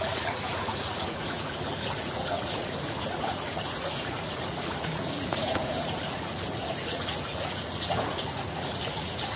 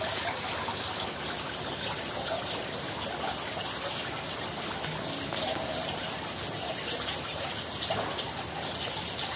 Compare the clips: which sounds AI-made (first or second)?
first